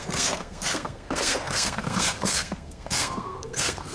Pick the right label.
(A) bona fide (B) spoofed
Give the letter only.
B